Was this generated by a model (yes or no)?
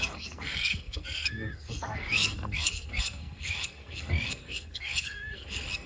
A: yes